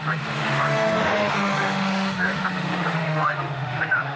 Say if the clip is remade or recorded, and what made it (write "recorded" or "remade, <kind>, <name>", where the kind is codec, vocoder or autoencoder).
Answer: remade, autoencoder, DAC-VAE